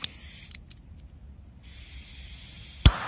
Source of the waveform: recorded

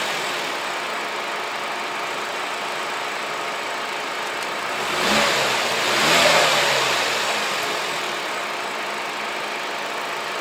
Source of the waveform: recorded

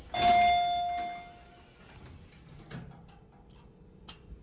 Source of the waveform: recorded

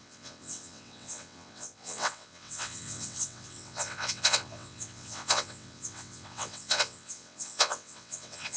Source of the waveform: remade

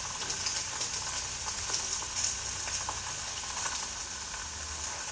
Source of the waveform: recorded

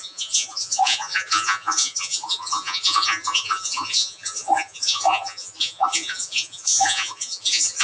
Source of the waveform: remade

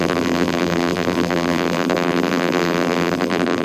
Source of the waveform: remade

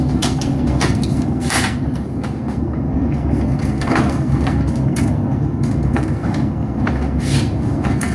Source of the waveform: remade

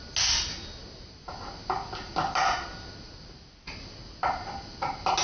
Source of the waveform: recorded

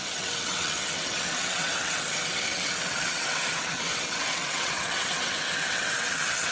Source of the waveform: remade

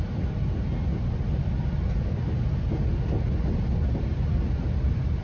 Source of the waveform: recorded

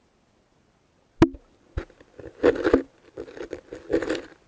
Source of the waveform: recorded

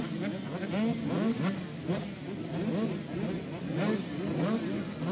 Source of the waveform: recorded